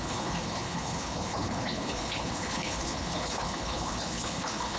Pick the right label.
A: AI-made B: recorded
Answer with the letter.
A